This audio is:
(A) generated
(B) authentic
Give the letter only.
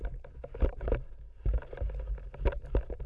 B